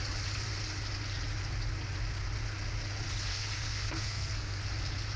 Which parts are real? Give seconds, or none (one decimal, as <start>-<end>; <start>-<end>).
0.0-3.3; 4.6-5.2